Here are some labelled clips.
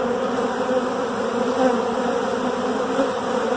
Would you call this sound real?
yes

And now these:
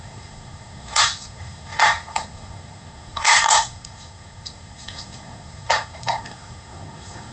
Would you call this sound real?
no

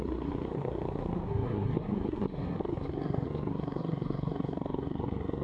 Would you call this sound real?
no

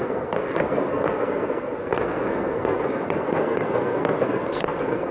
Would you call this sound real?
no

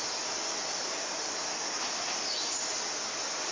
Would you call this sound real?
yes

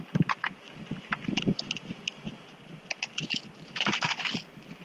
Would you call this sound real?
yes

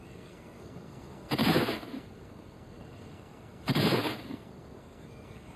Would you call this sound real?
no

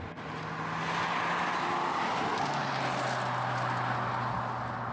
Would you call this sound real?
yes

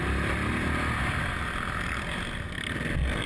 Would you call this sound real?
yes